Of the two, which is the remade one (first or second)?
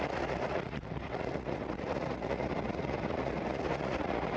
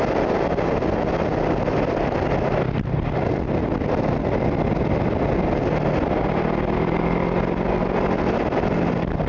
first